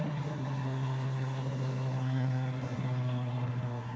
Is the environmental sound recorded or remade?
remade